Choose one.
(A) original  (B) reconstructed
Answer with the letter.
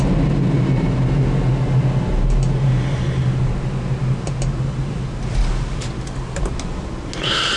A